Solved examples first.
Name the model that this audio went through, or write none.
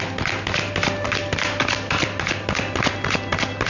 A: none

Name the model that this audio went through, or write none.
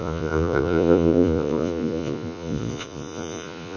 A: vocoder, Vocos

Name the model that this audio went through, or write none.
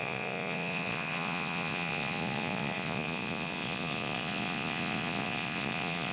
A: vocoder, Vocos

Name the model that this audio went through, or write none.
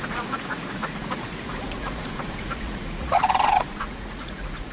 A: vocoder, Vocos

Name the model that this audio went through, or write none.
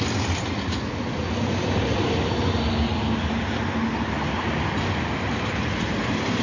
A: none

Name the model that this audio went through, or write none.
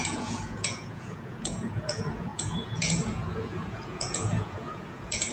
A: vocoder, Vocos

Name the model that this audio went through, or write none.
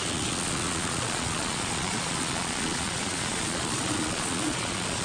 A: vocoder, Vocos